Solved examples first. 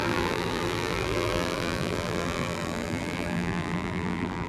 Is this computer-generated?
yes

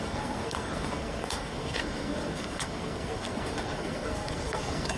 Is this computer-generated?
yes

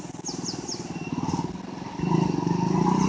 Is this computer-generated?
no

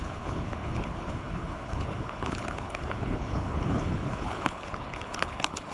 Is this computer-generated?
yes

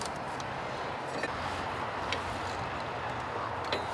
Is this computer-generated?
no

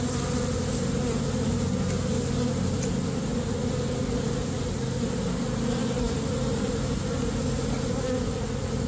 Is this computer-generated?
no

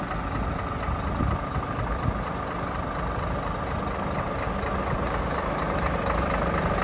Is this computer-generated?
no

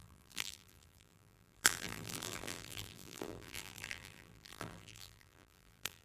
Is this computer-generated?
yes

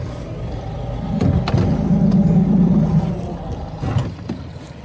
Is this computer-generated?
no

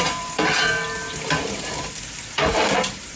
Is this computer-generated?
yes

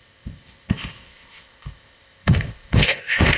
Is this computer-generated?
yes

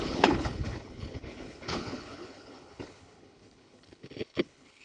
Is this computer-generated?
yes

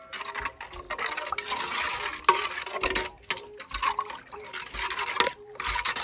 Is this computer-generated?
no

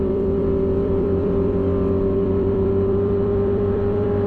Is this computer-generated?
yes